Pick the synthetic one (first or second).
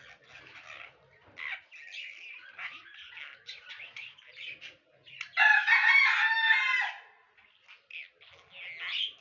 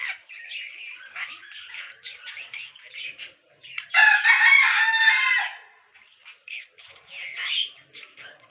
second